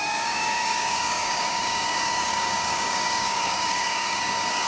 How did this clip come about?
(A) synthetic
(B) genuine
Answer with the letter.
A